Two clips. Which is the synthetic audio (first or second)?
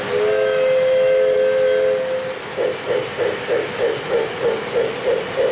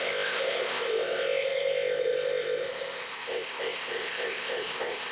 second